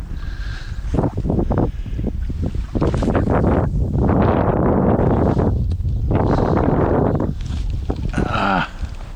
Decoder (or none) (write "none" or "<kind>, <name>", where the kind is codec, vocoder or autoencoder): none